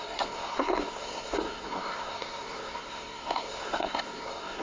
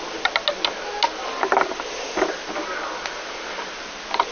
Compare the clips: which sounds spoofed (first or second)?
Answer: first